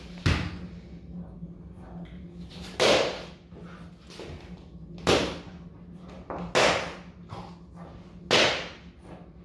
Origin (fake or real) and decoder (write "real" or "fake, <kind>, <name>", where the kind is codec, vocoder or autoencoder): real